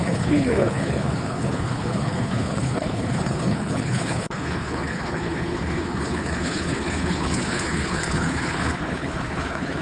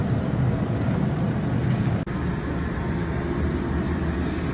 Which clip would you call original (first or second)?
second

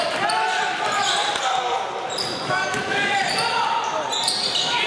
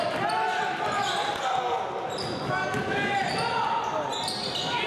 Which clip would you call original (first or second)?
second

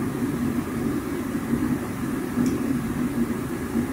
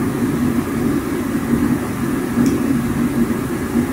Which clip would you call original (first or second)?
second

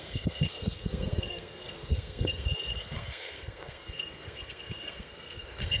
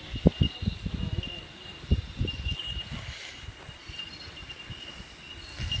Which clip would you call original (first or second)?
second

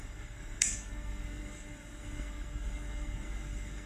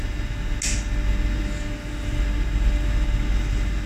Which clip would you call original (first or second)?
second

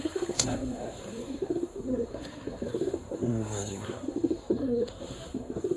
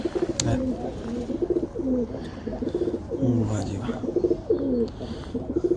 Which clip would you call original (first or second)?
second